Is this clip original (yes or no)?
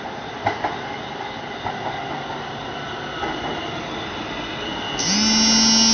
yes